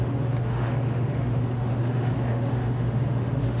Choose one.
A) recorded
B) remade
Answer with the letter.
B